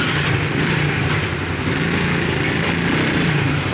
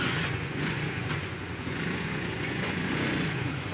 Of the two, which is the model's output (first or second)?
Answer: second